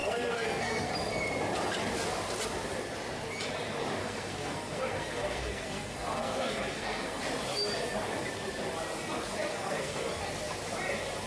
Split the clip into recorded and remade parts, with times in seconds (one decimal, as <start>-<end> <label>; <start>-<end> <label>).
0.0-0.9 remade; 0.9-4.0 recorded; 4.0-7.2 remade; 7.2-9.5 recorded; 9.5-10.2 remade; 10.2-11.3 recorded